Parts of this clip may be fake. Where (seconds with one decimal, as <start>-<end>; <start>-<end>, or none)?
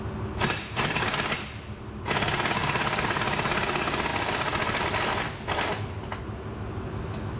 2.6-3.2; 4.1-4.8